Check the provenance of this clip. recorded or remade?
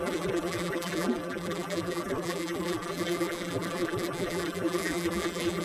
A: remade